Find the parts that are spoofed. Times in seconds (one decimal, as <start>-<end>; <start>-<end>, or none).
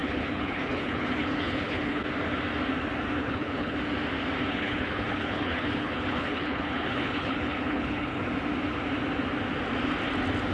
0.0-2.0; 3.2-3.8; 4.5-8.3